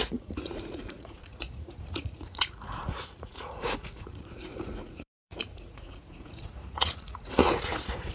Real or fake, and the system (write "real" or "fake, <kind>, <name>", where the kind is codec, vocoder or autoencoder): fake, vocoder, Vocos